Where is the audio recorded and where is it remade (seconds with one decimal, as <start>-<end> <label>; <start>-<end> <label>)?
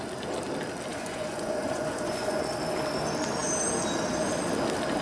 0.0-0.9 recorded; 0.9-2.4 remade; 2.4-5.0 recorded